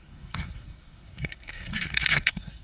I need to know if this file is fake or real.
fake